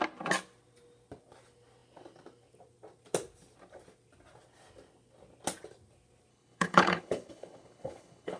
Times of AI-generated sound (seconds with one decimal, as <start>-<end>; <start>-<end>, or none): 6.3-8.4